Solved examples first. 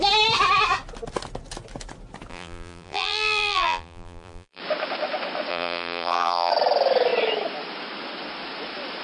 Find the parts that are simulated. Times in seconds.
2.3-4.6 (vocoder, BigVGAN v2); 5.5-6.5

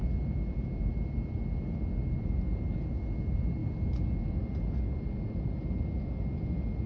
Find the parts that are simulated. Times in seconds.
none

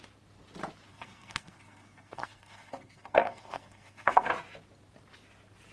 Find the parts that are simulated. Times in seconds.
0.9-4.3 (codec, SNAC)

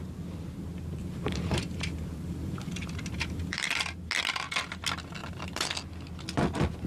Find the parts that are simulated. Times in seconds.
1.0-3.7 (vocoder, BigVGAN v2); 5.2-5.7

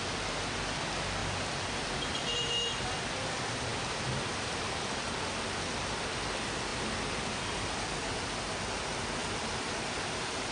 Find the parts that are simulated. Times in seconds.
1.2-3.0 (vocoder, BigVGAN v2); 3.7-5.0; 6.7-8.1; 9.2-10.5

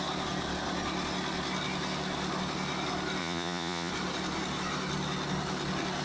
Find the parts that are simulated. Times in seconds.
3.2-3.9 (vocoder, Vocos)